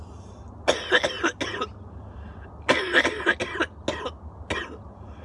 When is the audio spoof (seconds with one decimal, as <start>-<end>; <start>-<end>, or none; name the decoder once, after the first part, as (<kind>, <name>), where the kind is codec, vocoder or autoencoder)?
none